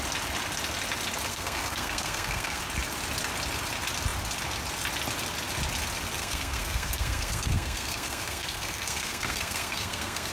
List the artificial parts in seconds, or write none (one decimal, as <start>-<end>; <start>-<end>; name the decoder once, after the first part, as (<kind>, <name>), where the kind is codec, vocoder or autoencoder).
1.3-2.6 (codec, SNAC); 6.2-10.3